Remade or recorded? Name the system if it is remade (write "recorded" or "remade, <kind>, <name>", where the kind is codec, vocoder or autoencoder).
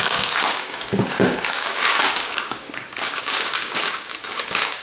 remade, codec, DAC